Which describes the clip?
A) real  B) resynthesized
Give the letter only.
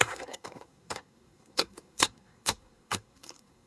B